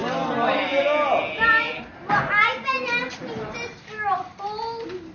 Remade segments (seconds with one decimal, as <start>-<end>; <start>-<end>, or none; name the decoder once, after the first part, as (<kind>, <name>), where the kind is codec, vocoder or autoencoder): none